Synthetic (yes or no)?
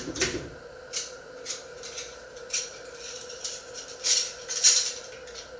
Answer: yes